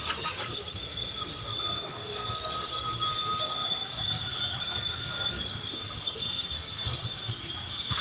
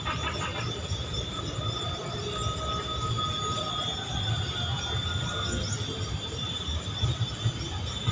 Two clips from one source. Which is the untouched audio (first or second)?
second